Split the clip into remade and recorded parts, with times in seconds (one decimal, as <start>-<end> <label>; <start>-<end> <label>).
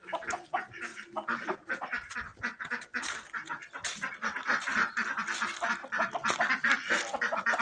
0.0-7.6 recorded